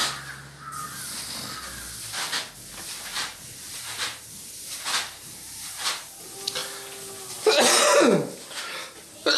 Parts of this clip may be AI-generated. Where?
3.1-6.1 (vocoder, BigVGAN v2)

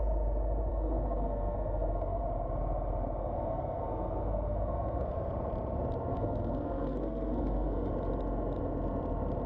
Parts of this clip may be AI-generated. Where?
0.7-2.2 (codec, SNAC); 3.2-5.3; 6.1-7.9

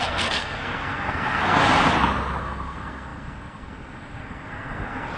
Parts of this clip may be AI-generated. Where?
0.0-1.6 (codec, SNAC); 2.4-5.2